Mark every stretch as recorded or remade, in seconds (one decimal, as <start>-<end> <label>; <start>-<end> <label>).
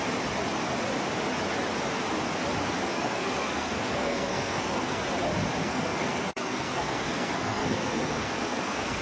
0.0-2.9 recorded; 2.9-5.0 remade; 5.0-5.6 recorded; 5.6-9.0 remade